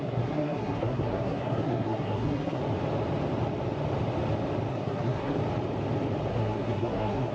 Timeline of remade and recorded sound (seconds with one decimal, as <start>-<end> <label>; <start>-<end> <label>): 0.0-2.6 remade; 2.6-4.7 recorded; 4.7-5.4 remade; 5.4-6.3 recorded; 6.3-7.3 remade